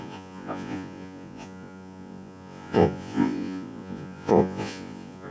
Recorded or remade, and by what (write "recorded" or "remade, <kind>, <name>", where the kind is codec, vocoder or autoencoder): remade, vocoder, Vocos